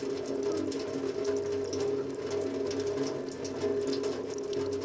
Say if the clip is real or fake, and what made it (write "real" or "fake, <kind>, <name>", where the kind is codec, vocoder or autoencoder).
real